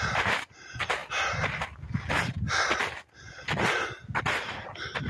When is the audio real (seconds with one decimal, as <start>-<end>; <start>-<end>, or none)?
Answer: 0.0-5.1